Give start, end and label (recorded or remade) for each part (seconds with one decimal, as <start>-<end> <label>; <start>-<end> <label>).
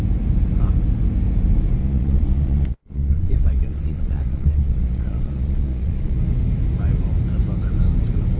0.0-1.8 recorded; 1.8-6.2 remade; 6.2-8.4 recorded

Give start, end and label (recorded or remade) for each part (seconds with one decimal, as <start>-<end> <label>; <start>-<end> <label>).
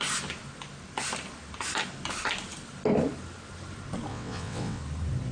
0.0-4.1 recorded; 4.1-4.8 remade; 4.8-5.3 recorded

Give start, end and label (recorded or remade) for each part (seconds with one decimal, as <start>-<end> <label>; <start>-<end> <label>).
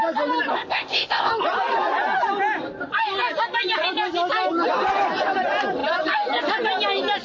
0.0-0.5 recorded; 0.5-1.3 remade; 1.3-7.2 recorded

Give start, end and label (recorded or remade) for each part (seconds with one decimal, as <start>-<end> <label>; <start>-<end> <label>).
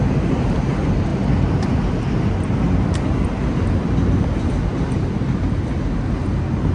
0.0-6.7 recorded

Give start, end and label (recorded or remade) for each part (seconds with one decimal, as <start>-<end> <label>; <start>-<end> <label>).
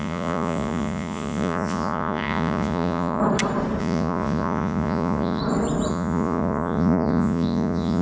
0.0-3.2 remade; 3.2-3.8 recorded; 3.8-5.4 remade; 5.4-5.9 recorded; 5.9-8.0 remade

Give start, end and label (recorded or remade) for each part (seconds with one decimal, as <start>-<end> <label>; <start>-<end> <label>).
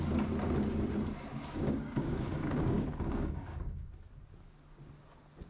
0.0-1.3 recorded; 1.3-3.9 remade; 3.9-5.5 recorded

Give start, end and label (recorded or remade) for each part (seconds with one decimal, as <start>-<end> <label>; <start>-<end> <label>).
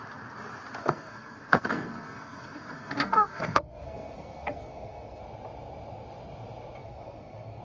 0.0-0.8 recorded; 0.8-5.2 remade; 5.2-6.8 recorded; 6.8-7.6 remade